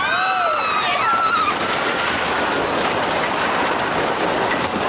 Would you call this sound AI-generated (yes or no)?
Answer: no